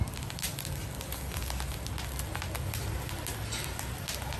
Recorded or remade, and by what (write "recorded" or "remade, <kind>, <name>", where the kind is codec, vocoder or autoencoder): recorded